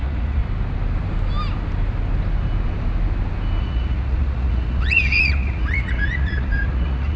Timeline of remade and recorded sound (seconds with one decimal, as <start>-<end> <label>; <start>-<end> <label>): 0.0-0.4 remade; 0.4-3.6 recorded; 3.6-7.2 remade